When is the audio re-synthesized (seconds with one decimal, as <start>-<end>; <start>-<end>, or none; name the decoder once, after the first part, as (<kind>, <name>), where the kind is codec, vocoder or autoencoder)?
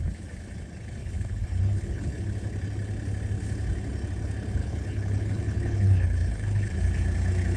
1.0-2.2 (codec, HILCodec); 4.6-6.8